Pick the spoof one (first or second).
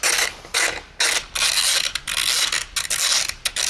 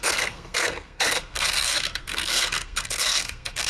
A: second